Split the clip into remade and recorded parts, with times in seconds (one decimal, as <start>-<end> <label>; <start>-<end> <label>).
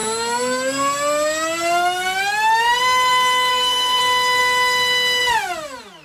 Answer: 0.0-3.5 recorded; 3.5-4.0 remade; 4.0-6.0 recorded